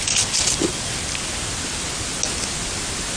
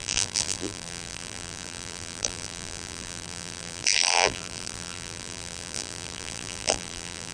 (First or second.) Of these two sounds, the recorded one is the first